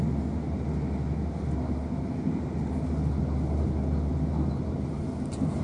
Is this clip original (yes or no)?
yes